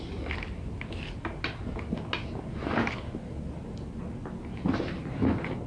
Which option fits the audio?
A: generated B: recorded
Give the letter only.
B